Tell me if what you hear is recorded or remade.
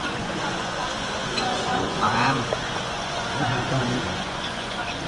remade